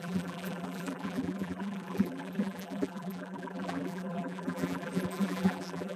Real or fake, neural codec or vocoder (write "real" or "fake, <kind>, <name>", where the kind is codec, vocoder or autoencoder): fake, vocoder, BigVGAN v2